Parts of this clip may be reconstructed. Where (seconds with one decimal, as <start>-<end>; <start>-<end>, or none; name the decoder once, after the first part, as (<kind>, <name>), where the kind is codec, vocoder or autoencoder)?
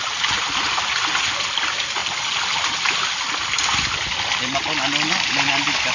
none